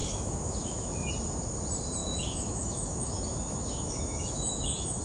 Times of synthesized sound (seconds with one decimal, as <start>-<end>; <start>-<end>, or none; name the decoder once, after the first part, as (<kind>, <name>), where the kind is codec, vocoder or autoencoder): 0.0-1.1 (autoencoder, DAC-VAE); 2.0-5.0